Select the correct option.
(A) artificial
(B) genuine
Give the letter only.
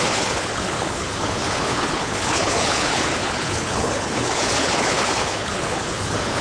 A